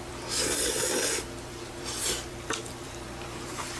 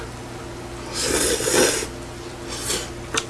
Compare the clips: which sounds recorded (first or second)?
second